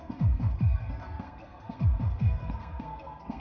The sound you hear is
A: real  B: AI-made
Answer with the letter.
B